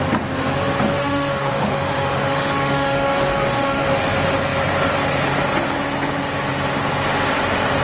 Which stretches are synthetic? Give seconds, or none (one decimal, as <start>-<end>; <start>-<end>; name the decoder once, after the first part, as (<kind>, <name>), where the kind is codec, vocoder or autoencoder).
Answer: 1.0-4.0 (autoencoder, DAC-VAE)